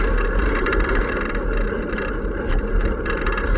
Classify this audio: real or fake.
fake